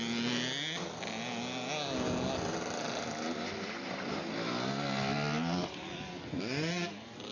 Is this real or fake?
real